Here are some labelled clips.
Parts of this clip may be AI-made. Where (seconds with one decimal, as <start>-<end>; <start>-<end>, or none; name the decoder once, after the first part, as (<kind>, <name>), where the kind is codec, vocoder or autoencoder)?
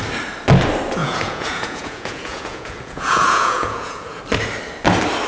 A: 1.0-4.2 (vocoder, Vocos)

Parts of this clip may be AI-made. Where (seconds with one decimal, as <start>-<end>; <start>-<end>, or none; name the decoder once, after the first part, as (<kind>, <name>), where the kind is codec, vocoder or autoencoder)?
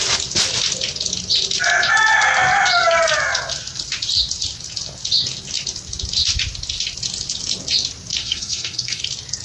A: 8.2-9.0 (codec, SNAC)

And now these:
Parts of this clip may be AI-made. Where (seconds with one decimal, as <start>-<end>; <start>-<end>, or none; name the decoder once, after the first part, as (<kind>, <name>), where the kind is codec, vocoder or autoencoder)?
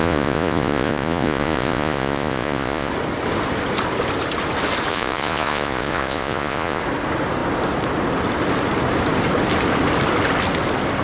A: 0.0-2.9 (vocoder, Vocos); 4.9-6.8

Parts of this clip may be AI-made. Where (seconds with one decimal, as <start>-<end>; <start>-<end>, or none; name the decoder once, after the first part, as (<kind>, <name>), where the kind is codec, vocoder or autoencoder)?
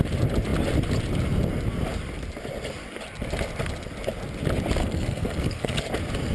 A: 4.8-5.8 (codec, SNAC)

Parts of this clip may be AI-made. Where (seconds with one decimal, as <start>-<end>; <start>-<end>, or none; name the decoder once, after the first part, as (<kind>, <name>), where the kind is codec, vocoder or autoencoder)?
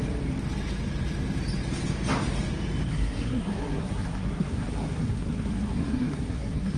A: 2.9-6.8 (codec, SNAC)